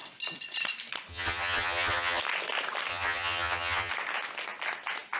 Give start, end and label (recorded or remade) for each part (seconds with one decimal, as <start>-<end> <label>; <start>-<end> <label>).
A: 0.0-1.1 recorded; 1.1-2.2 remade; 2.2-2.9 recorded; 2.9-3.9 remade; 3.9-5.2 recorded